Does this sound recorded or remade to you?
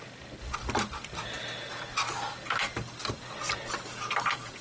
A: recorded